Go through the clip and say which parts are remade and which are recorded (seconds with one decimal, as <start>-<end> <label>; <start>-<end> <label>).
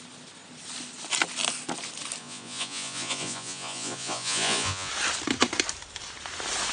0.0-2.2 recorded; 2.2-4.9 remade; 4.9-6.7 recorded